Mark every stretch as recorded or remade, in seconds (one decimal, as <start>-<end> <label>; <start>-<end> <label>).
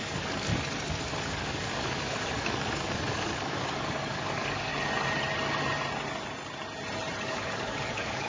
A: 0.0-0.5 remade; 0.5-1.0 recorded; 1.0-4.7 remade; 4.7-7.2 recorded; 7.2-8.3 remade